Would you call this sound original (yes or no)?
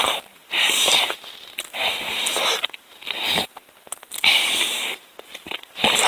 no